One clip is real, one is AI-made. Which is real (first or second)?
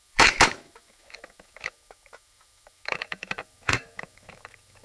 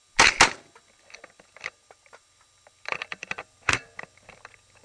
second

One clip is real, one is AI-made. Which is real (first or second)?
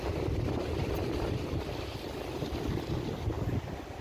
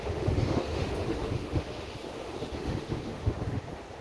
first